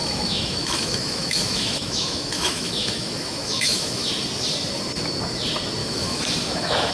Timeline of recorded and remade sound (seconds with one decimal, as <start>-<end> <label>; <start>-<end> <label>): 0.0-4.1 remade; 4.1-5.8 recorded; 5.8-6.9 remade